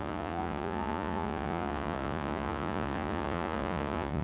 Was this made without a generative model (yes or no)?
no